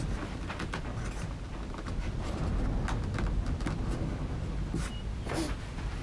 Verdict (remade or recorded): recorded